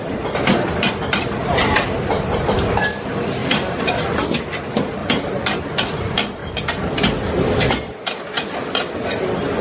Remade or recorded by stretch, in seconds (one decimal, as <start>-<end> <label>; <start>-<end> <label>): 0.0-1.4 recorded; 1.4-2.6 remade; 2.6-3.4 recorded; 3.4-3.9 remade; 3.9-5.0 recorded; 5.0-5.6 remade; 5.6-6.4 recorded; 6.4-7.0 remade; 7.0-9.6 recorded